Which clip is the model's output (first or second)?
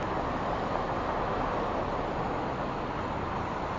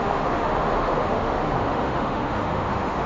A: second